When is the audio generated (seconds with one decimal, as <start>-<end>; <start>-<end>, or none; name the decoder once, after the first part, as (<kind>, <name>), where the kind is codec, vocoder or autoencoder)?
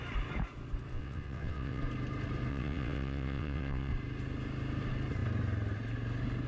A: 0.9-1.8 (vocoder, WaveNeXt); 2.5-3.9